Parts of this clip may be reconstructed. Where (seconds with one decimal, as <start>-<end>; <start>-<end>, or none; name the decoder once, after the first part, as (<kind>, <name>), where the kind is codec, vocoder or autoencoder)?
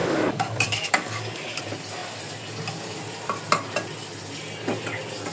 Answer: 0.0-1.6 (codec, DAC)